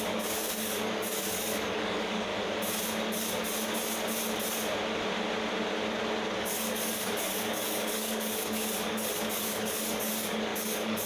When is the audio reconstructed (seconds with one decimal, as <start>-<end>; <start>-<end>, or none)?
0.0-2.3; 6.4-11.1